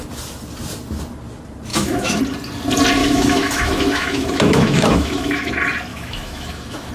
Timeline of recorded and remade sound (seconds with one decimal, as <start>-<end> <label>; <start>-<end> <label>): 0.0-1.7 recorded; 1.7-2.2 remade; 2.2-3.0 recorded; 3.0-5.5 remade; 5.5-5.9 recorded; 5.9-6.9 remade